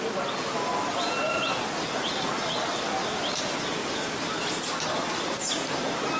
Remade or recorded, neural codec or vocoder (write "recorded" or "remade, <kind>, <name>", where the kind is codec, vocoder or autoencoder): recorded